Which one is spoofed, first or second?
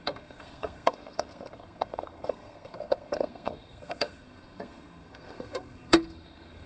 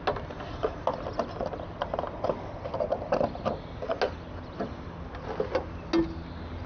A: first